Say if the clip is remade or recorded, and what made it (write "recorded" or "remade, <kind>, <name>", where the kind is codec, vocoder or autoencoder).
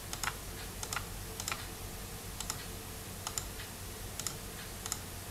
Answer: recorded